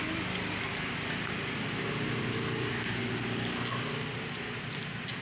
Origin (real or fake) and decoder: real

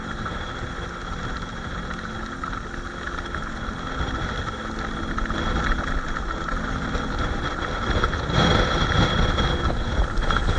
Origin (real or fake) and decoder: real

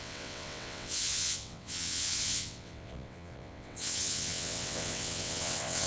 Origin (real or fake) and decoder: fake, vocoder, WaveNeXt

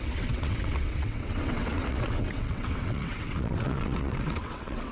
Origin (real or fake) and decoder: fake, vocoder, WaveNeXt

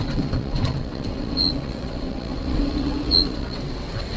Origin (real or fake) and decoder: fake, vocoder, WaveNeXt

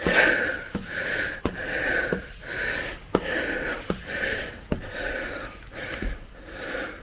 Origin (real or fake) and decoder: real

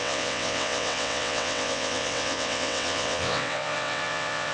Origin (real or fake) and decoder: fake, vocoder, WaveNeXt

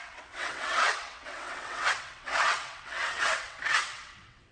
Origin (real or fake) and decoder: fake, vocoder, WaveNeXt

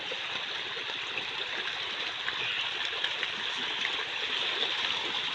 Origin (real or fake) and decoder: real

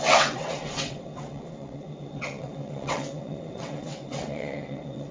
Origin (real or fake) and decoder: fake, vocoder, WaveNeXt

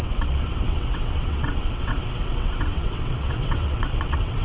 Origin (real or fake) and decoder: fake, vocoder, WaveNeXt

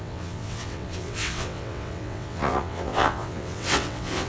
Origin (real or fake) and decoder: fake, vocoder, WaveNeXt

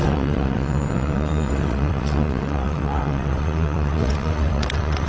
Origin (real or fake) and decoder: fake, vocoder, WaveNeXt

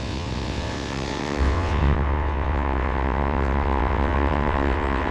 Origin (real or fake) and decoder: fake, vocoder, WaveNeXt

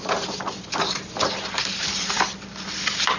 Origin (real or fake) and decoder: real